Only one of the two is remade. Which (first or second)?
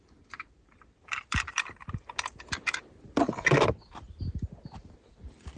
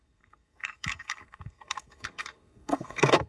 second